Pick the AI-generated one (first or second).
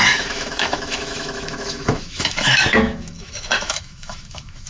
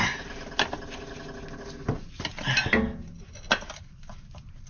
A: first